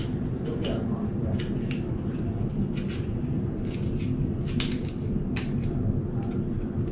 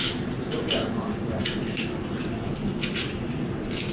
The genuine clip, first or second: first